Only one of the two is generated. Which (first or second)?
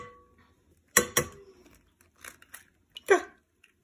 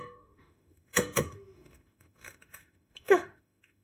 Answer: second